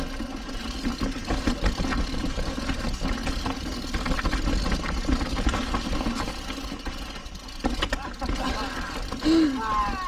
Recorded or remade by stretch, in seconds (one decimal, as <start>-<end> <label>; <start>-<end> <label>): 0.0-10.1 recorded